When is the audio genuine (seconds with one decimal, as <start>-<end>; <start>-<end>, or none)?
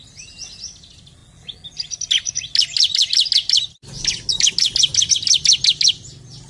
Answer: 0.0-6.5